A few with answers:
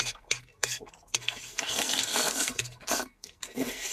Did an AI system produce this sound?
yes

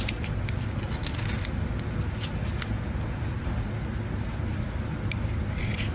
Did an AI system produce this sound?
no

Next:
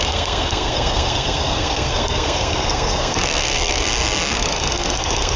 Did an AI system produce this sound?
yes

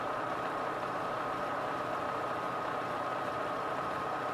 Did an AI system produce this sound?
yes